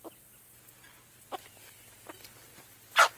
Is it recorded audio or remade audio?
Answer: recorded